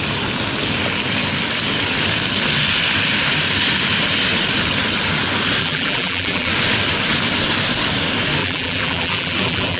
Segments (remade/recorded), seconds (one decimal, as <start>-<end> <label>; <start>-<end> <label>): 0.0-5.6 recorded; 5.6-6.5 remade; 6.5-8.4 recorded; 8.4-9.8 remade